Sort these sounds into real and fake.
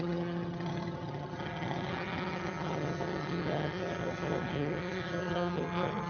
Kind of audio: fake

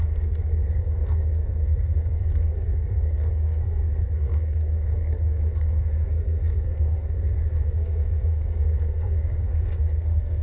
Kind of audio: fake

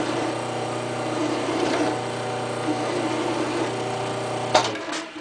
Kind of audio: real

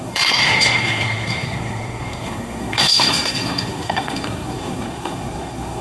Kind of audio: fake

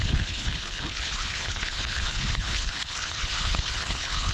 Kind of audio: fake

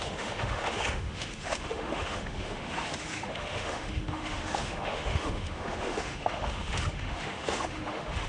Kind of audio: fake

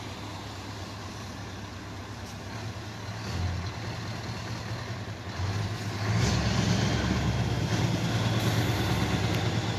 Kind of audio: real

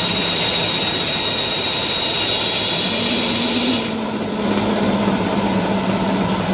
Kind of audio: real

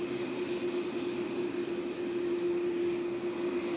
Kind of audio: real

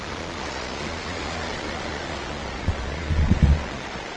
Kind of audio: fake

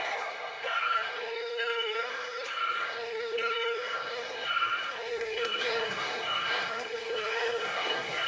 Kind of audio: fake